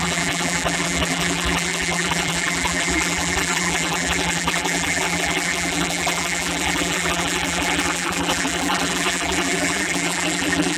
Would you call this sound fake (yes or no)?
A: yes